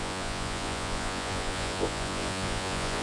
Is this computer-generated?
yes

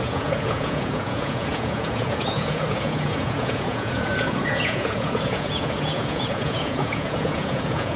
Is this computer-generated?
yes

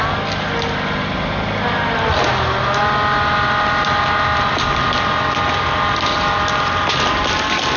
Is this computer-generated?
no